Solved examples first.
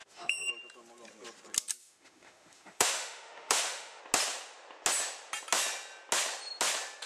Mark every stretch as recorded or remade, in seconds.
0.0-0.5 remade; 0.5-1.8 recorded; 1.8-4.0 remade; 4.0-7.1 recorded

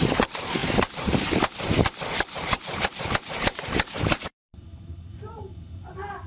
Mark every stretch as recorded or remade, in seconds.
0.0-6.3 remade

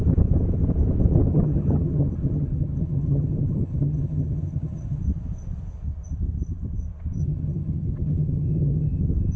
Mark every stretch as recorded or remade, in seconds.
0.0-1.3 recorded; 1.3-5.0 remade; 5.0-7.2 recorded; 7.2-9.0 remade; 9.0-9.4 recorded

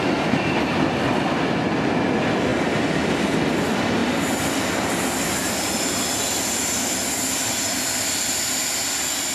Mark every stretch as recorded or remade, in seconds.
0.0-9.3 recorded

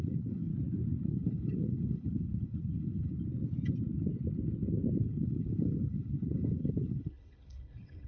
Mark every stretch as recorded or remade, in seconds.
0.0-0.5 remade; 0.5-1.1 recorded; 1.1-3.1 remade; 3.1-5.0 recorded; 5.0-8.1 remade

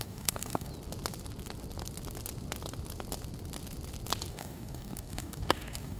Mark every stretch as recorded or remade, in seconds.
0.0-0.7 remade; 0.7-4.3 recorded; 4.3-6.0 remade